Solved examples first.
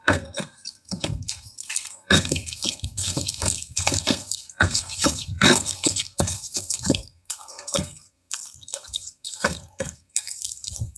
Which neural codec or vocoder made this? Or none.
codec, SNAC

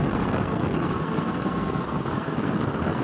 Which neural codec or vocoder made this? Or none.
codec, SNAC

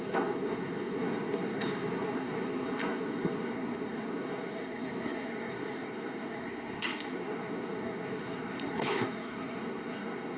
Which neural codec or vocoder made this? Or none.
codec, SNAC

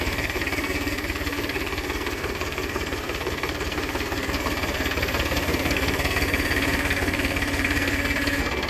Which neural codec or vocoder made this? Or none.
codec, SNAC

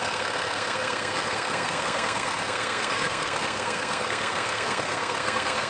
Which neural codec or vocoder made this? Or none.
codec, SNAC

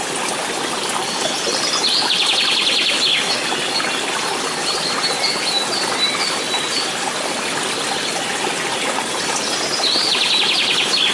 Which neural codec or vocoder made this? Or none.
none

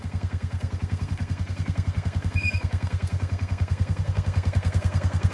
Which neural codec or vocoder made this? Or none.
codec, SNAC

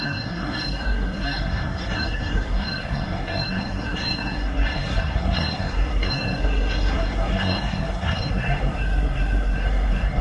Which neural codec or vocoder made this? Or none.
codec, SNAC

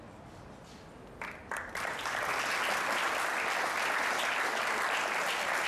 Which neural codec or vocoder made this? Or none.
none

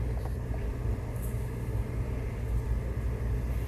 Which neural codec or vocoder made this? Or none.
none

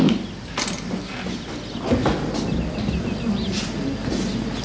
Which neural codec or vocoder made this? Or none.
none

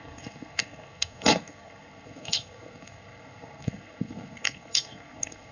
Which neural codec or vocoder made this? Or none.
codec, SNAC